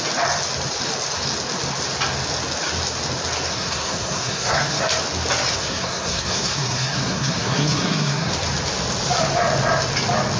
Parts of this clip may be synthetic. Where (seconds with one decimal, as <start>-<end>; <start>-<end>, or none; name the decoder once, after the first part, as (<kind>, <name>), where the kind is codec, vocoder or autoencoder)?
3.5-4.8 (codec, SNAC); 5.5-8.3